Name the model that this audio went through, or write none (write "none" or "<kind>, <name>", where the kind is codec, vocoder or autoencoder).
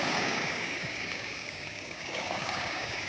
codec, DAC